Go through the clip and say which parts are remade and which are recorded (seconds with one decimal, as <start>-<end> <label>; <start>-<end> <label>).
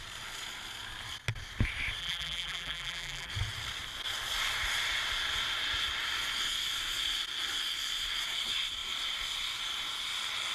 0.0-2.0 recorded; 2.0-3.3 remade; 3.3-10.5 recorded